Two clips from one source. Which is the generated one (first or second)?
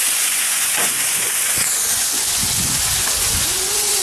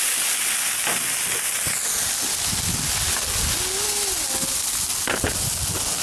first